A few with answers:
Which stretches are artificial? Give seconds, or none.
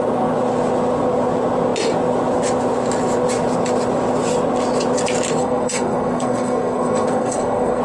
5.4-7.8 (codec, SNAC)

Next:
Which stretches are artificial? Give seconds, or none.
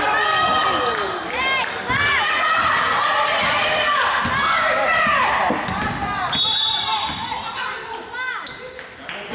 none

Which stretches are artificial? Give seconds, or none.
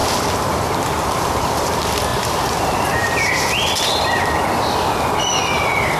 0.0-6.0 (vocoder, BigVGAN v2)